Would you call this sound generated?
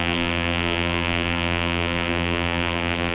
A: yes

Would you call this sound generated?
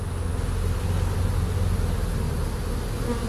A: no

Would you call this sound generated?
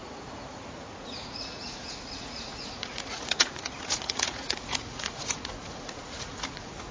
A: yes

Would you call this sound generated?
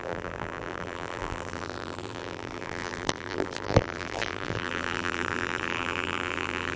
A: yes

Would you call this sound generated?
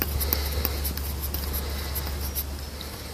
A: no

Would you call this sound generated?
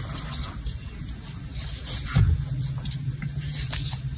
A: no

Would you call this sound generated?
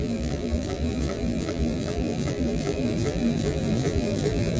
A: yes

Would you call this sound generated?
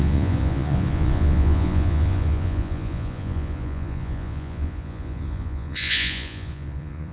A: yes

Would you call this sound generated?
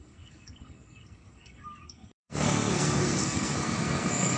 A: yes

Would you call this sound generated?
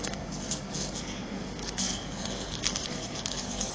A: yes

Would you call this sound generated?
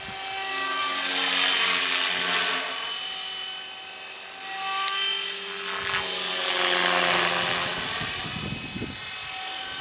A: no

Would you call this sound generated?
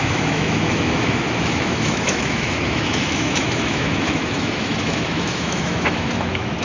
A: yes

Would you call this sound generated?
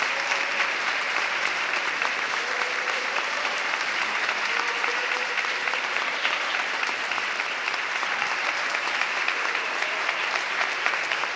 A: yes